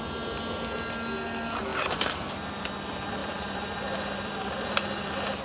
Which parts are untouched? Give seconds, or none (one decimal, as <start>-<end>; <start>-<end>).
0.0-1.7; 2.3-3.2; 3.8-5.4